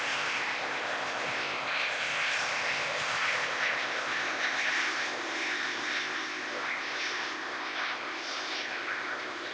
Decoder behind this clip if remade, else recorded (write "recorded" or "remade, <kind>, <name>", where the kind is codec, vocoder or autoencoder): remade, codec, ZipCodec